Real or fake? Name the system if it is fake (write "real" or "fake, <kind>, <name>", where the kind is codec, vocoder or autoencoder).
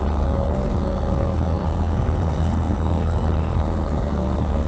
fake, codec, SNAC